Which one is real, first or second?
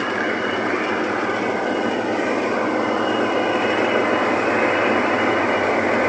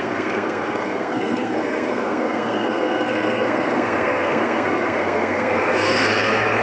first